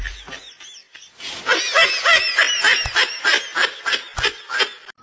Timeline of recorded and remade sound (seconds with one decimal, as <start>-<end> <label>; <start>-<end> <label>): 0.0-5.0 recorded